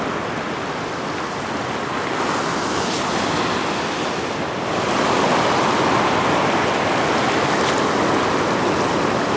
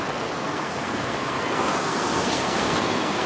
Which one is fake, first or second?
second